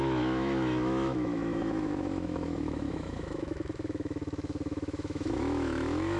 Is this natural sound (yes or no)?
no